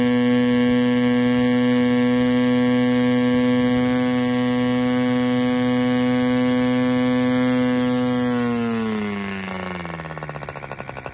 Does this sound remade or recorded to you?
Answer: recorded